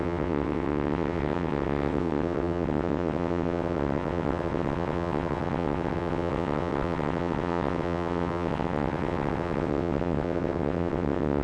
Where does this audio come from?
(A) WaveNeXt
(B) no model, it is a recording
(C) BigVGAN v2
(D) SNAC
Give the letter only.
A